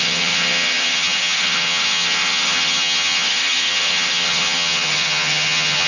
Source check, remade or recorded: remade